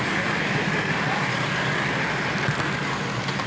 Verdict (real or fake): real